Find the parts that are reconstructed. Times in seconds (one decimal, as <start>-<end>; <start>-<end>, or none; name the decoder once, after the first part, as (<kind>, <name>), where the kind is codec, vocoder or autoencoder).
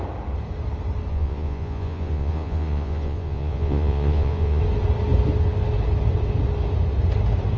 1.1-4.6 (vocoder, Vocos)